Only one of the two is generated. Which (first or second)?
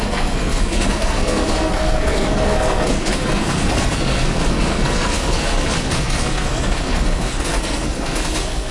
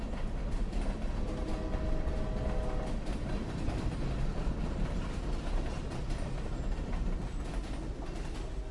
first